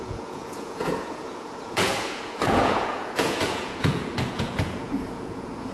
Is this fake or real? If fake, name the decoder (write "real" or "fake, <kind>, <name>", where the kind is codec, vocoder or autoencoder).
fake, vocoder, Vocos